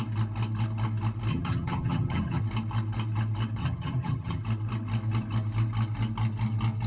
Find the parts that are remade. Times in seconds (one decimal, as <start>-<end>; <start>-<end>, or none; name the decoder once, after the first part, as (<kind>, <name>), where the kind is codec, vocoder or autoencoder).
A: 1.3-2.4 (vocoder, HiFi-GAN); 3.6-4.4